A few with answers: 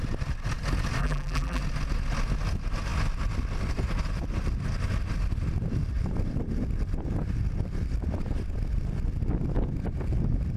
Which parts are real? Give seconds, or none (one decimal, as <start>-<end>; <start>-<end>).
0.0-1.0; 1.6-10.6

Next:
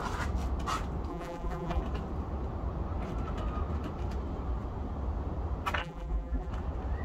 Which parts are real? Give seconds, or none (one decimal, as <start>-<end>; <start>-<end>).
0.0-1.1; 1.8-5.8; 6.5-7.0

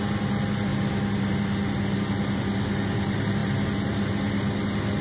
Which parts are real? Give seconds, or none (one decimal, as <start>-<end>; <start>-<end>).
0.0-5.0

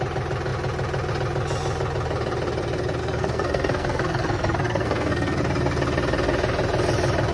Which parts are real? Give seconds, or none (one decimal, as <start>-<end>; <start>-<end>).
0.0-3.0; 5.4-7.3

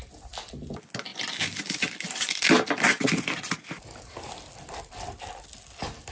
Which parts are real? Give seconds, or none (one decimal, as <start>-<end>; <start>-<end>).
0.0-6.1

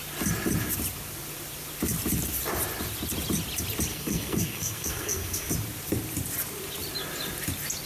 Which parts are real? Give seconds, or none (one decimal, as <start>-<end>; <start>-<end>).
0.0-3.9; 5.5-7.9

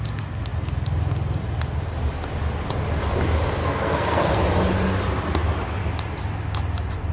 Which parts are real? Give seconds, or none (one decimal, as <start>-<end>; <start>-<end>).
0.0-3.6; 4.4-7.1